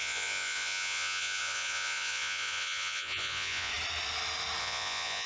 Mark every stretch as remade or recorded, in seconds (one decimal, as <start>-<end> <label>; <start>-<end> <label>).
0.0-3.7 remade; 3.7-4.6 recorded; 4.6-5.3 remade

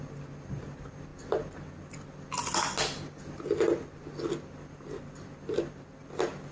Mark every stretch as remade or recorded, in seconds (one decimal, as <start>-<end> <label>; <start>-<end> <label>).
0.0-6.5 recorded

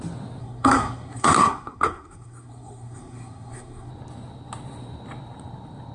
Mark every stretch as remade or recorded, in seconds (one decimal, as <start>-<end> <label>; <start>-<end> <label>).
0.0-0.4 recorded; 0.4-3.9 remade; 3.9-5.9 recorded

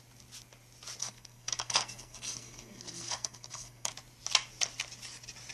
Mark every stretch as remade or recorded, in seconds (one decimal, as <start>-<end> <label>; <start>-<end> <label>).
0.0-1.0 recorded; 1.0-3.9 remade; 3.9-5.5 recorded